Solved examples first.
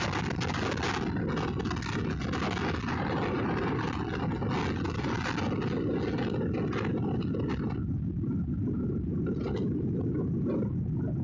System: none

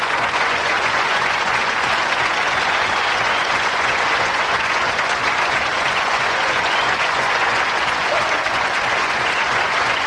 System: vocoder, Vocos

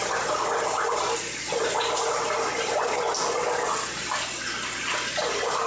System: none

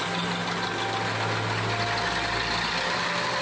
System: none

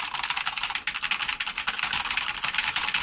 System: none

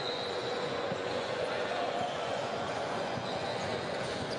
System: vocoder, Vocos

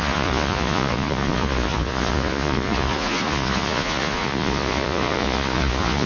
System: vocoder, Vocos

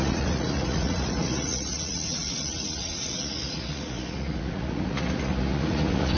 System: vocoder, Vocos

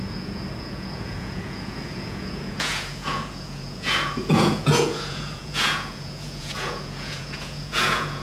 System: vocoder, Vocos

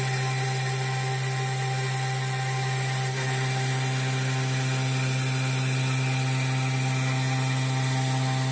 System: none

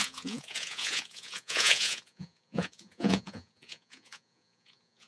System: vocoder, Vocos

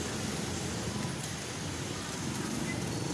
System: none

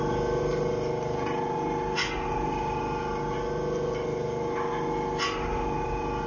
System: none